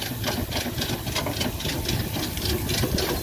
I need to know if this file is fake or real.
real